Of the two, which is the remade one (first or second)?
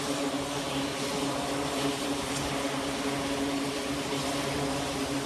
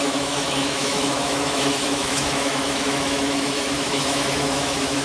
second